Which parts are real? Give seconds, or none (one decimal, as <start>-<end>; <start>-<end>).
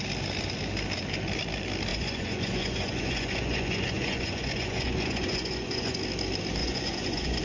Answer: 0.0-1.9; 6.0-6.6